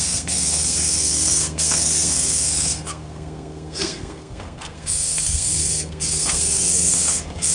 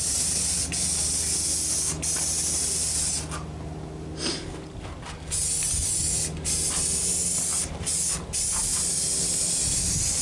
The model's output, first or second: first